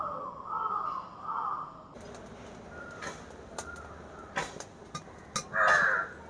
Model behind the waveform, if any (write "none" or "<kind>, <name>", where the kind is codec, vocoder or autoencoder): none